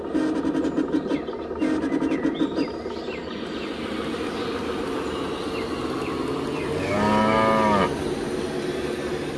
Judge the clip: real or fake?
real